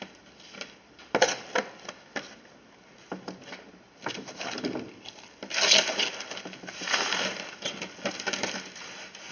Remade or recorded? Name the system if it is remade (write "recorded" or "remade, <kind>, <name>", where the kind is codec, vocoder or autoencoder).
recorded